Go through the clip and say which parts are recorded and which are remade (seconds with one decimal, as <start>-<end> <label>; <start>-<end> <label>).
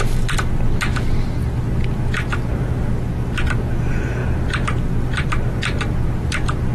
0.0-6.7 recorded